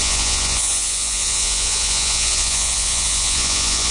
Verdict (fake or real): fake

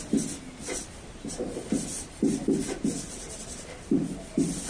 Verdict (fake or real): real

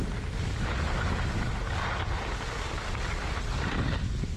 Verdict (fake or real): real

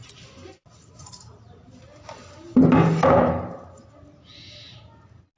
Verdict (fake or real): real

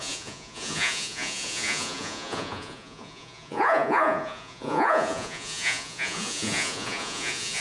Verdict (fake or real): fake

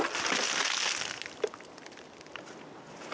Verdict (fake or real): real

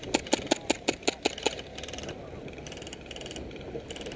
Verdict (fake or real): real